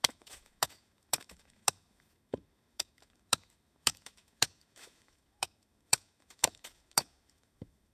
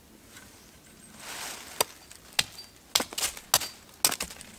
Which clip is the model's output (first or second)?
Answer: first